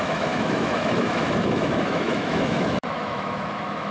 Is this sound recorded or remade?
remade